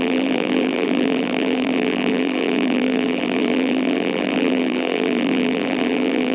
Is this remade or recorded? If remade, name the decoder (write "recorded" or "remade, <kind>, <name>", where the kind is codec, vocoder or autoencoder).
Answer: remade, vocoder, BigVGAN v2